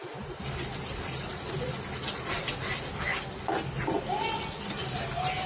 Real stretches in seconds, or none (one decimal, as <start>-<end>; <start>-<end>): 0.0-5.5